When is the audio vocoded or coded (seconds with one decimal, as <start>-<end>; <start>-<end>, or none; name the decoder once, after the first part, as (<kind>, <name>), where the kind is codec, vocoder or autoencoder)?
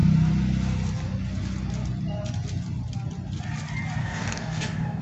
4.0-5.0 (codec, DAC)